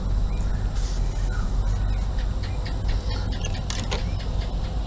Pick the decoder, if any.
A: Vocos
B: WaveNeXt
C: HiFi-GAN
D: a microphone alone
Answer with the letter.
D